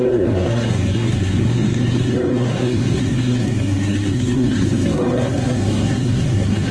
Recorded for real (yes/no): no